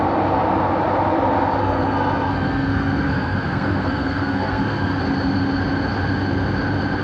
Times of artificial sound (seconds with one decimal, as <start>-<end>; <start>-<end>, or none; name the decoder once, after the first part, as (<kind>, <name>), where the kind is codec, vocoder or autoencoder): 1.6-5.0 (codec, SNAC)